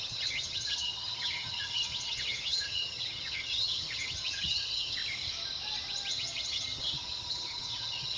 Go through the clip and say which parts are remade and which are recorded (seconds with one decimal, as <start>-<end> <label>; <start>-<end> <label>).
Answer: 0.0-5.0 remade; 5.0-6.1 recorded; 6.1-8.2 remade